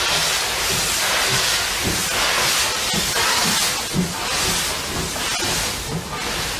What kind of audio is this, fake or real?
real